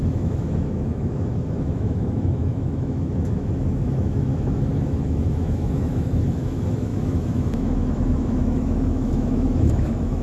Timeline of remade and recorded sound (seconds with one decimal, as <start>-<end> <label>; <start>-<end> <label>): 0.0-10.2 remade